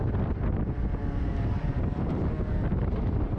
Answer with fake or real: real